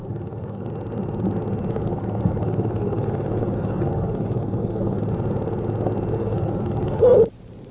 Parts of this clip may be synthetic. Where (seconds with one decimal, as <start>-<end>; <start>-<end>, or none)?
0.0-0.7; 1.7-5.0; 6.2-7.0

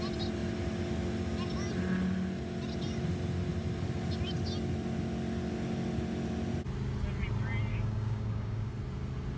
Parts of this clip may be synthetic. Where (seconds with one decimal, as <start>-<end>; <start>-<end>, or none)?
7.7-8.7